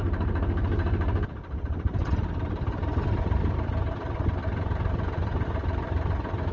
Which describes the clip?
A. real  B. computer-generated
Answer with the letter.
A